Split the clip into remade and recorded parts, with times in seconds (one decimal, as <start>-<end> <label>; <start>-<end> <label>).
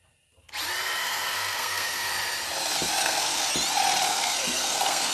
0.0-1.0 recorded; 1.0-2.1 remade; 2.1-3.0 recorded; 3.0-3.5 remade; 3.5-4.1 recorded; 4.1-5.1 remade